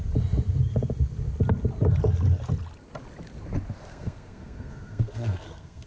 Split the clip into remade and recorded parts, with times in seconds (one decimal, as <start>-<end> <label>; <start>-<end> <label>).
0.0-3.9 recorded; 3.9-5.9 remade